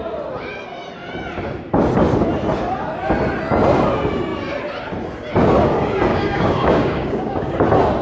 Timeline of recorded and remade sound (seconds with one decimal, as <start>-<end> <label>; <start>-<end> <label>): 0.0-6.1 recorded; 6.1-7.6 remade; 7.6-8.0 recorded